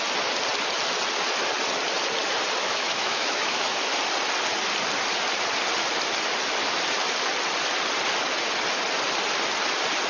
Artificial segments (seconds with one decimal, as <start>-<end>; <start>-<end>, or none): 2.6-3.8